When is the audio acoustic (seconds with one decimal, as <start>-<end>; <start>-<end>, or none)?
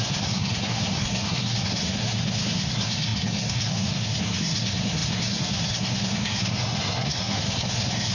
none